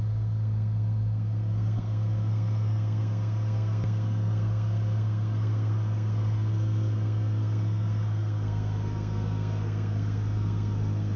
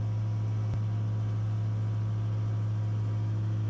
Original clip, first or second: second